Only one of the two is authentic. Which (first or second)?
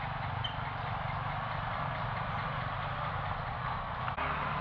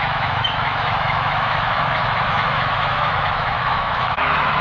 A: first